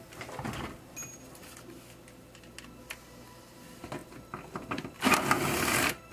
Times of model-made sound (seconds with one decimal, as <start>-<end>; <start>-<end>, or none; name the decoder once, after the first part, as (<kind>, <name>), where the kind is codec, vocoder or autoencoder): none